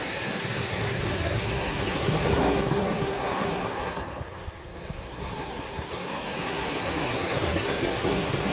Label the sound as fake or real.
fake